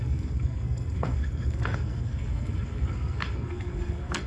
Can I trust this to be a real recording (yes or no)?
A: no